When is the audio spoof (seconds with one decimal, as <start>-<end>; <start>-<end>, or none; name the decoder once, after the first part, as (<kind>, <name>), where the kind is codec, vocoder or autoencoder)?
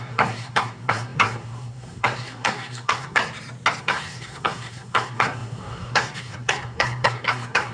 0.0-3.2 (codec, SNAC); 3.8-7.7